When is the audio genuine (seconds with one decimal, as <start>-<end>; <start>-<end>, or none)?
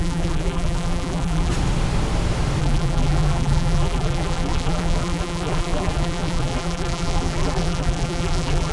1.5-2.6